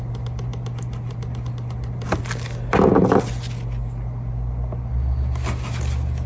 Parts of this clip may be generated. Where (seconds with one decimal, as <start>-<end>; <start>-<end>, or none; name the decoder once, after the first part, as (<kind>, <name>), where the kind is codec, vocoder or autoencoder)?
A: none